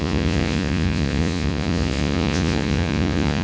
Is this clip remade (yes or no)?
yes